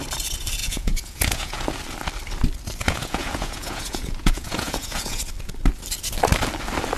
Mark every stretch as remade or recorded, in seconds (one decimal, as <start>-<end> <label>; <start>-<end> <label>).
0.0-0.6 recorded; 0.6-1.6 remade; 1.6-2.8 recorded; 2.8-5.2 remade; 5.2-7.0 recorded